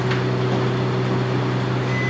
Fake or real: real